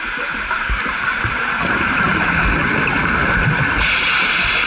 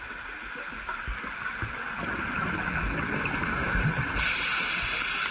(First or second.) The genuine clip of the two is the second